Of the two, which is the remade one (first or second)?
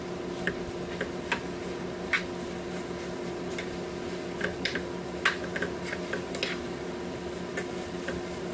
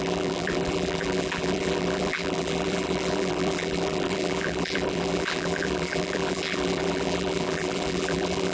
second